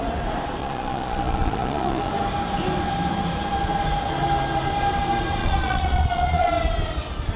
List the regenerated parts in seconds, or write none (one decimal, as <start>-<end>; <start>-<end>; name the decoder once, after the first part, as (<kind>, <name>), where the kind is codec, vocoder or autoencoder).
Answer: 0.6-2.1 (vocoder, Vocos); 5.4-6.5

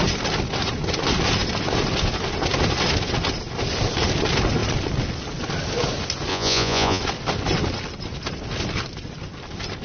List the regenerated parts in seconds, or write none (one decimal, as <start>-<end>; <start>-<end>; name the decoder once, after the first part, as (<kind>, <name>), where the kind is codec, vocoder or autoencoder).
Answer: 6.3-7.0 (vocoder, Vocos)

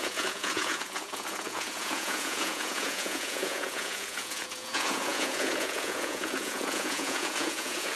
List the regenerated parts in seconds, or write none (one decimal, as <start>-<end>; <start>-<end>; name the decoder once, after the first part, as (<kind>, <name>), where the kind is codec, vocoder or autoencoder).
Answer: 0.0-8.0 (vocoder, Vocos)

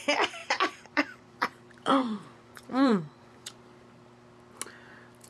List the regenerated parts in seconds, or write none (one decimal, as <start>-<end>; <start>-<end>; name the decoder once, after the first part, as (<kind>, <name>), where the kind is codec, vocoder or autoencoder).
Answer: 0.4-3.6 (vocoder, Vocos)

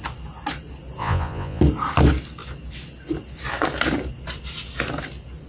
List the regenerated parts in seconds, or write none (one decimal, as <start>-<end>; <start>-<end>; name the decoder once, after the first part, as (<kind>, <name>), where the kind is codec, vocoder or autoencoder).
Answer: 1.0-1.6 (vocoder, Vocos)

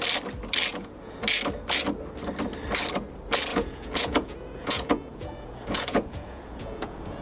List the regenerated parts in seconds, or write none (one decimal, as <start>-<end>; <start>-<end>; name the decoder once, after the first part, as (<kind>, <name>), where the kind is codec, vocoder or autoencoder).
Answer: 0.7-1.2 (vocoder, Vocos); 3.5-7.2